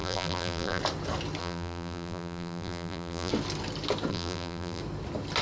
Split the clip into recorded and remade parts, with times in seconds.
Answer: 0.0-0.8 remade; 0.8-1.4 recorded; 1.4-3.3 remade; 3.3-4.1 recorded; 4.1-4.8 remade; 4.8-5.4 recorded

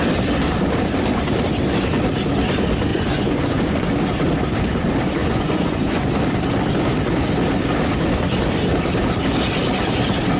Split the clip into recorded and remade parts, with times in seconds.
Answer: 0.0-2.9 recorded; 2.9-3.9 remade; 3.9-5.2 recorded; 5.2-6.1 remade; 6.1-10.4 recorded

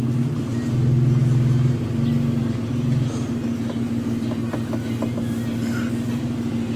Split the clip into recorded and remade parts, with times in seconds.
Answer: 0.0-6.8 recorded

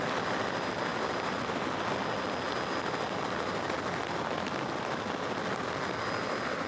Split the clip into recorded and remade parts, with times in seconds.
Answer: 0.0-6.7 recorded

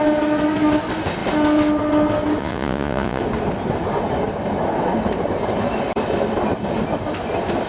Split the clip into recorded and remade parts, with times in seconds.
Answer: 0.0-2.4 recorded; 2.4-3.2 remade; 3.2-7.7 recorded

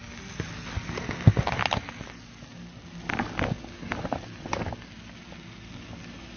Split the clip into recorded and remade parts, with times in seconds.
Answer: 0.0-6.4 recorded